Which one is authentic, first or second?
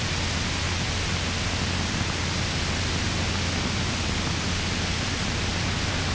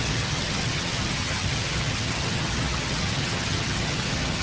first